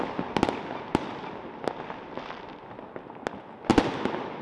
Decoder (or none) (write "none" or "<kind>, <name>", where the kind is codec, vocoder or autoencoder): none